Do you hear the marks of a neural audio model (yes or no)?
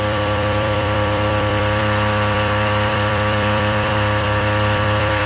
yes